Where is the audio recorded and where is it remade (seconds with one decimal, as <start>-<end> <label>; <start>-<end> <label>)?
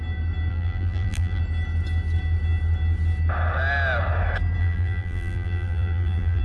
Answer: 0.0-0.5 recorded; 0.5-1.4 remade; 1.4-4.6 recorded; 4.6-6.4 remade